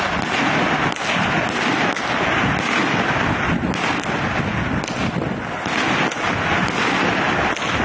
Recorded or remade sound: recorded